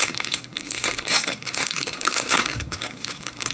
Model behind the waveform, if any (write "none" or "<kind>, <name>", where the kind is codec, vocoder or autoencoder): codec, SNAC